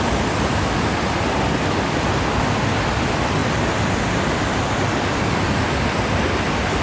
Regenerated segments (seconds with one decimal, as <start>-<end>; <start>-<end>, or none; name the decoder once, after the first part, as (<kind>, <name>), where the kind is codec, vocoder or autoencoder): none